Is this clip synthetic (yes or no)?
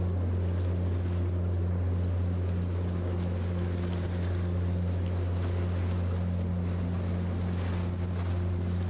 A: no